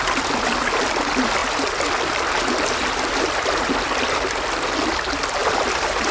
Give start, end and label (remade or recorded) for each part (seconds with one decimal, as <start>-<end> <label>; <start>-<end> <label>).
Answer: 0.0-6.1 recorded